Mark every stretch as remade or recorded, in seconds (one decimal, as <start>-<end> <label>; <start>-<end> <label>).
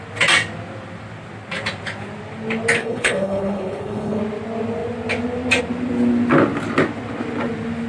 0.0-2.8 recorded; 2.8-4.2 remade; 4.2-7.9 recorded